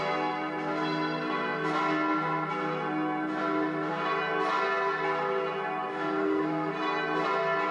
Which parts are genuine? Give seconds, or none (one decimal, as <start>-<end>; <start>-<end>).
0.0-5.9; 6.7-7.7